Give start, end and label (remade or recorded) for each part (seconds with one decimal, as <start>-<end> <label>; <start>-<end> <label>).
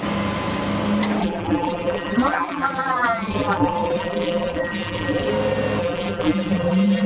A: 0.0-1.2 recorded; 1.2-5.3 remade; 5.3-5.8 recorded; 5.8-7.1 remade